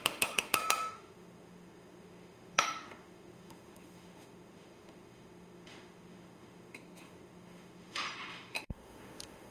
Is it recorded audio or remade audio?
remade